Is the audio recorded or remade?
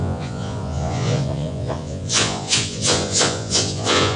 remade